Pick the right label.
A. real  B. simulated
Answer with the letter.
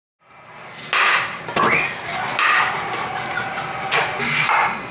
A